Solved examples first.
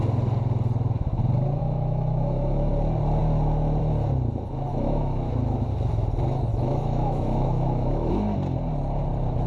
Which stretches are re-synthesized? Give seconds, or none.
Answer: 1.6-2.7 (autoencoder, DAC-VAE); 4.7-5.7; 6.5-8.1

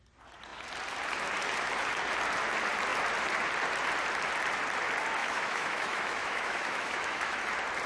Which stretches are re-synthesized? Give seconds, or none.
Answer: 5.2-7.4 (autoencoder, DAC-VAE)